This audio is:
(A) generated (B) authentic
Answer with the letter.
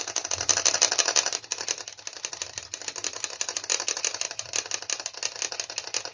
B